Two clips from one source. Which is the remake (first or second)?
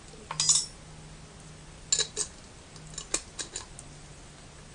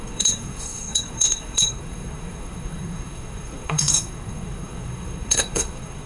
second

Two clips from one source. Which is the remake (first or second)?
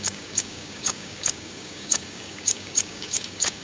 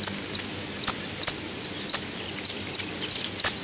first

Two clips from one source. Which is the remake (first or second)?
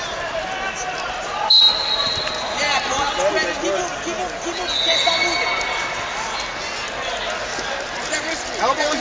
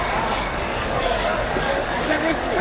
second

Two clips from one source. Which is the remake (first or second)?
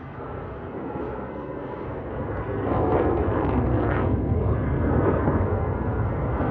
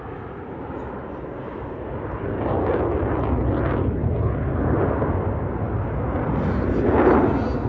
first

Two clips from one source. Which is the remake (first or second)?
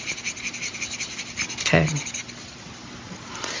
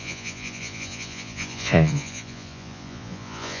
second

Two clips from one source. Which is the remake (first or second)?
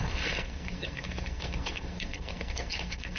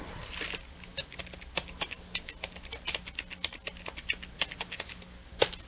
first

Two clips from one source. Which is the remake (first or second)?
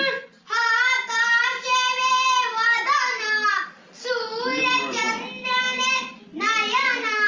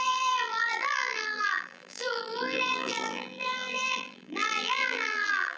second